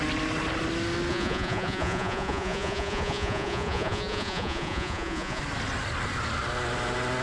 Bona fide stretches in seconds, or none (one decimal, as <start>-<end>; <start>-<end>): 0.0-1.1; 5.4-7.2

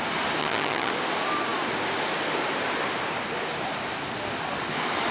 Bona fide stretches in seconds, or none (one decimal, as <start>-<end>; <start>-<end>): 0.0-0.4; 0.9-5.1

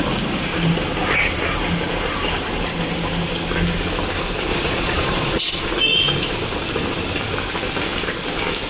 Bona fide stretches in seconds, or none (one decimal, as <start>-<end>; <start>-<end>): 0.0-4.5; 5.4-8.7

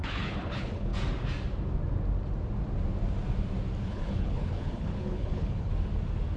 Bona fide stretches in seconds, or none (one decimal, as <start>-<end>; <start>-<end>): 0.9-3.8; 5.7-6.4